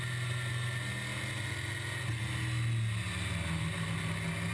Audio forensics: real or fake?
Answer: real